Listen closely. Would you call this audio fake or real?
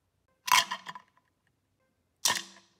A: real